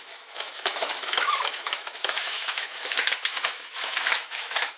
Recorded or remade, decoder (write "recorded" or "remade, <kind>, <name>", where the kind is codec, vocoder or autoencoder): remade, autoencoder, DAC-VAE